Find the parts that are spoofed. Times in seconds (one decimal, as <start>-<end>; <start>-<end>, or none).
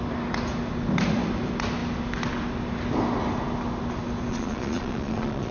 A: 4.3-5.5